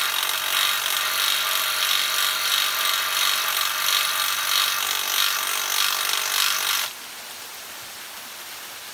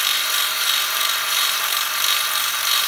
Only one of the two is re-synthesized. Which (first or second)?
second